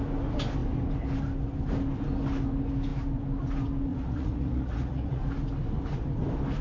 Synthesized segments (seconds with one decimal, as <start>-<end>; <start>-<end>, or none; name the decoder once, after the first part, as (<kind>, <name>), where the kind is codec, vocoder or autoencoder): 3.9-5.2 (vocoder, Vocos)